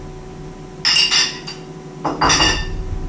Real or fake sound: real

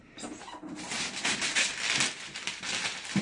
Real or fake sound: real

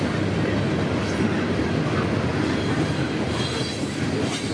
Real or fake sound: real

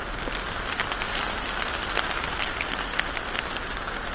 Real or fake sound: real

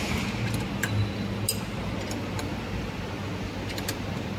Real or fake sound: real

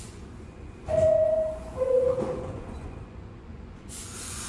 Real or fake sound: fake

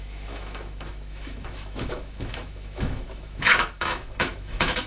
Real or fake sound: fake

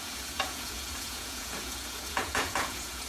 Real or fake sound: fake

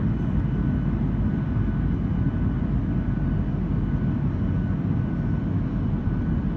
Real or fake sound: real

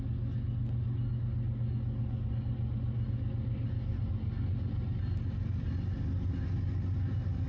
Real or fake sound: real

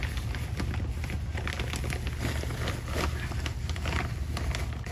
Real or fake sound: real